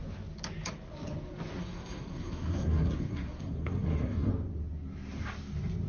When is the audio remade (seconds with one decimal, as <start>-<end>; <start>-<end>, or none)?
1.6-4.3